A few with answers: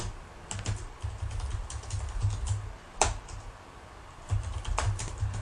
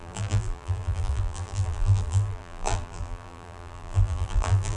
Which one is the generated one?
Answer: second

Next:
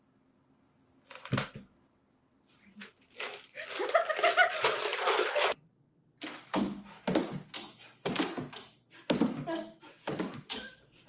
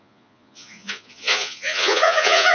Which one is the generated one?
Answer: second